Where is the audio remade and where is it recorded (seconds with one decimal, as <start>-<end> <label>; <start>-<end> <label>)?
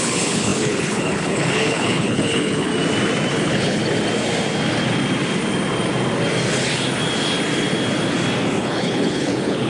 0.0-2.7 remade; 2.7-3.3 recorded; 3.3-3.8 remade; 3.8-8.6 recorded; 8.6-9.7 remade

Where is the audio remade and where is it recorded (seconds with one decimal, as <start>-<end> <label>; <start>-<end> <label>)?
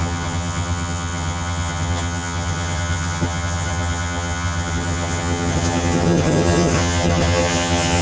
0.0-8.0 remade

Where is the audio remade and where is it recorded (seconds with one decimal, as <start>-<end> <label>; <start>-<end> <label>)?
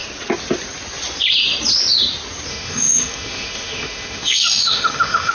0.0-2.5 recorded; 2.5-5.3 remade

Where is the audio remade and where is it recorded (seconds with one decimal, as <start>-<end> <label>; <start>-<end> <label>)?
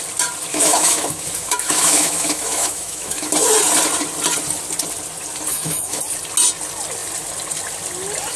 0.0-0.5 recorded; 0.5-3.3 remade; 3.3-5.5 recorded; 5.5-6.0 remade; 6.0-8.4 recorded